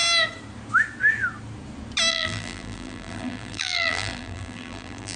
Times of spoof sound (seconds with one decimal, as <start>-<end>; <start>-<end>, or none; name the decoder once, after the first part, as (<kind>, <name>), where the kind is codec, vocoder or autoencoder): 2.1-5.2 (vocoder, BigVGAN v2)